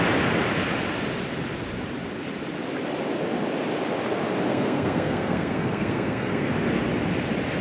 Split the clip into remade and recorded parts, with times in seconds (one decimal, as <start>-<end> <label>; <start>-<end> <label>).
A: 0.0-4.5 recorded; 4.5-6.5 remade; 6.5-7.6 recorded